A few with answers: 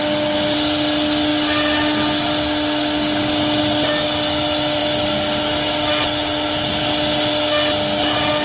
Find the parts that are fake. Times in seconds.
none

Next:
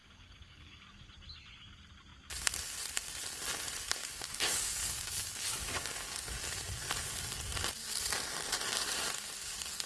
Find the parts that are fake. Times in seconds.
0.0-0.8 (codec, DAC); 4.0-6.6

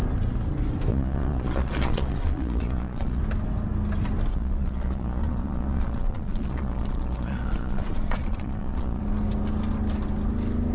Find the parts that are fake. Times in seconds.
0.9-3.2 (vocoder, Vocos); 4.3-9.0

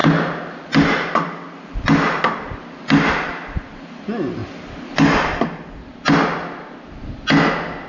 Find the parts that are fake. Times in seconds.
none

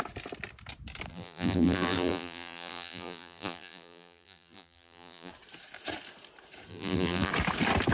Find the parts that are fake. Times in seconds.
1.1-5.3 (vocoder, BigVGAN v2); 6.7-7.3

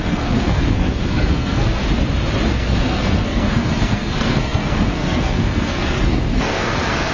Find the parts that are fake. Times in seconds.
0.0-1.8 (codec, SNAC); 2.5-7.1

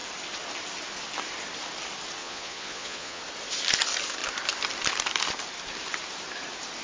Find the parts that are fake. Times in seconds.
2.2-3.2 (vocoder, Vocos)